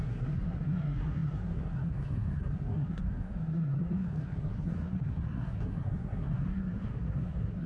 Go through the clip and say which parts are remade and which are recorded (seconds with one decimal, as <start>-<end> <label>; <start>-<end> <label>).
0.0-7.7 remade

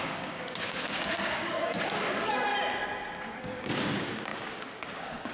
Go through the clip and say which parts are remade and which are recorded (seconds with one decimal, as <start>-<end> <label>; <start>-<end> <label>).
0.0-2.5 remade; 2.5-3.4 recorded; 3.4-5.3 remade

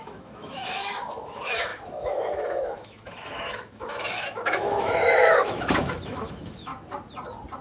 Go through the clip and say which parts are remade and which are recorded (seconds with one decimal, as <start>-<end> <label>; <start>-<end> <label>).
0.0-6.7 remade; 6.7-7.6 recorded

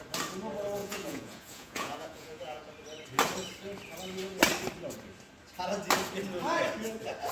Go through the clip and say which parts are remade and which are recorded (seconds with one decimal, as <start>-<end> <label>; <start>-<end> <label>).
0.0-0.8 recorded; 0.8-2.7 remade; 2.7-7.3 recorded

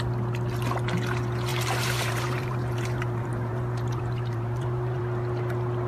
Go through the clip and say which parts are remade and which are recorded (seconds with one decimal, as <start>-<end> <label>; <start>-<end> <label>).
0.0-1.5 recorded; 1.5-5.0 remade; 5.0-5.9 recorded

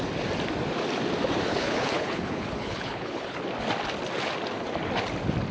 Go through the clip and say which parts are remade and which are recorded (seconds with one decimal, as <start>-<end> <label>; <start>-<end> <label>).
0.0-1.5 recorded; 1.5-3.4 remade; 3.4-5.5 recorded

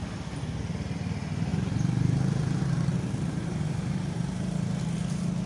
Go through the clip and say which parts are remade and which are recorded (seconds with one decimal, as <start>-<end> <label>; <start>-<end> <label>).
0.0-1.5 recorded; 1.5-4.8 remade; 4.8-5.5 recorded